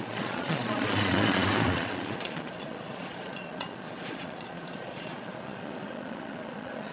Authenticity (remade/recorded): remade